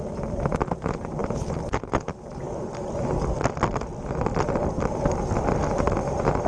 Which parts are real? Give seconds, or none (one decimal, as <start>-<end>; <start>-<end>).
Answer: 0.0-6.5